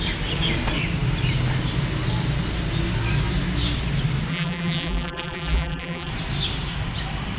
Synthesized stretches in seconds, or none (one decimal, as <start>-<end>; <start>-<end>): 4.3-6.1